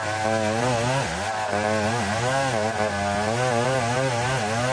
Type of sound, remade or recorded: recorded